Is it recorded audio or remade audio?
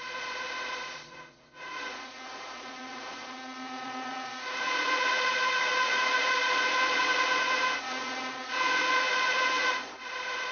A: remade